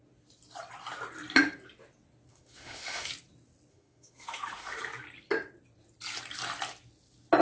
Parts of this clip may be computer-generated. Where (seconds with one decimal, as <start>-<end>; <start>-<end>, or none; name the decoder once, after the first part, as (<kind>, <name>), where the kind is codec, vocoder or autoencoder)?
2.3-3.1 (autoencoder, DAC-VAE); 3.7-4.8